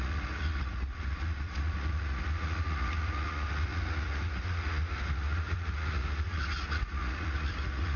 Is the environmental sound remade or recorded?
remade